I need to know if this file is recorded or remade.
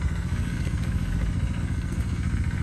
remade